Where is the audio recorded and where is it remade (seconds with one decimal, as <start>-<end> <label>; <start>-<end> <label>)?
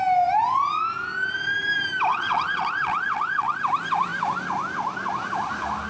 0.0-2.1 recorded; 2.1-3.6 remade; 3.6-5.9 recorded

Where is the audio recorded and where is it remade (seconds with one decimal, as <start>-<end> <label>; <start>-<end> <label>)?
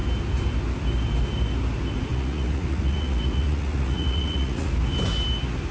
0.0-2.1 recorded; 2.1-4.7 remade; 4.7-5.7 recorded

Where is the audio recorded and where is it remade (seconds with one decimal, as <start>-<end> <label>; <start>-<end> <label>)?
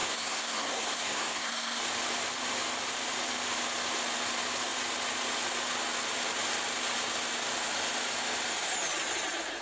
0.0-1.8 remade; 1.8-9.6 recorded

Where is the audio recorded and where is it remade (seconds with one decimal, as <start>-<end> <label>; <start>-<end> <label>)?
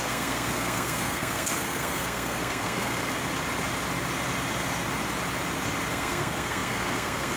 0.0-3.2 remade; 3.2-5.9 recorded; 5.9-7.4 remade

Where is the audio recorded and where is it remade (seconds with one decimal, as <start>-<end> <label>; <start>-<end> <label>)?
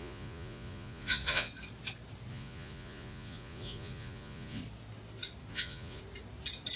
0.0-1.5 remade; 1.5-2.3 recorded; 2.3-4.6 remade; 4.6-5.5 recorded; 5.5-6.0 remade; 6.0-6.8 recorded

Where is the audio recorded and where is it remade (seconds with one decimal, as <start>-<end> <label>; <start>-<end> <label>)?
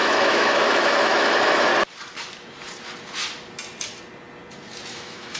0.0-1.7 remade; 1.7-4.9 recorded; 4.9-5.4 remade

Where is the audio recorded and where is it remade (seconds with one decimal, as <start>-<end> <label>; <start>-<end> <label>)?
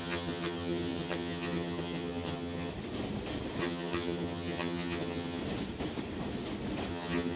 0.0-2.7 remade; 2.7-3.6 recorded; 3.6-5.4 remade; 5.4-6.9 recorded; 6.9-7.4 remade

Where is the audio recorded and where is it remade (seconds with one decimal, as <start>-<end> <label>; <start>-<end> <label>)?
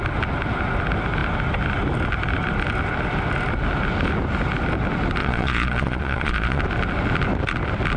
0.0-5.2 recorded; 5.2-6.6 remade; 6.6-8.0 recorded